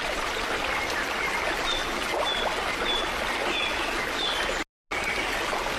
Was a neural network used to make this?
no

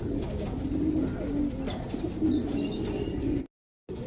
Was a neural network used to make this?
no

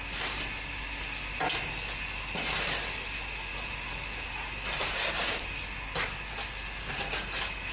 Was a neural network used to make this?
no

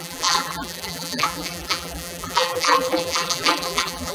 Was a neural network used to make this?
yes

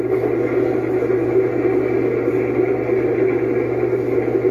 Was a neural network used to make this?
no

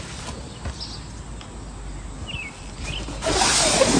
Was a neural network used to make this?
no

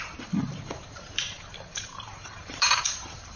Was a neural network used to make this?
yes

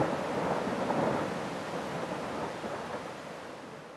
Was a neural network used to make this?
no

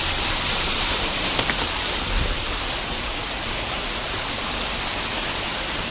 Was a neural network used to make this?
yes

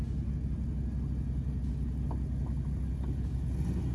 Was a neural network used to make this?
no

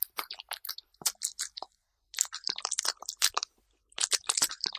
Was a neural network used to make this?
yes